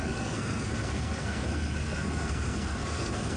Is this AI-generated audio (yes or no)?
yes